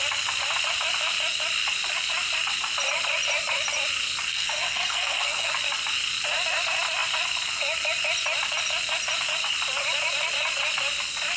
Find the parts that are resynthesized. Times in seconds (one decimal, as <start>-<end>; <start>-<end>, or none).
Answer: 4.3-5.5